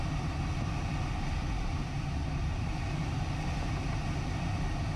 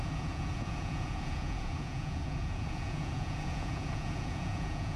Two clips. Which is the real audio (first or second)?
first